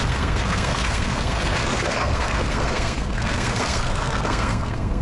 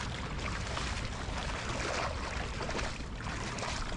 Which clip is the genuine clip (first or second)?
second